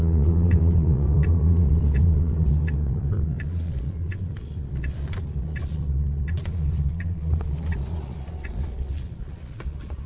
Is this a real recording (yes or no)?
no